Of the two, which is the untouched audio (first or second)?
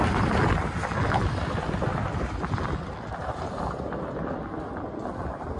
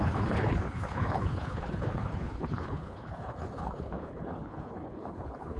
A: first